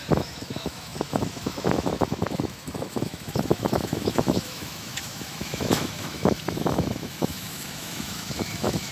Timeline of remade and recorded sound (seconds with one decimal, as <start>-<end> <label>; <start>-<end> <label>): 0.0-8.9 remade